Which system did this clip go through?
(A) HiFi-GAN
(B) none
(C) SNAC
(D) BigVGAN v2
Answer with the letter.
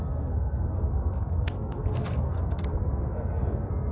C